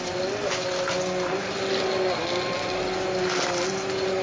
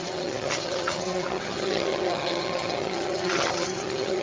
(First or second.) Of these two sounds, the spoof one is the second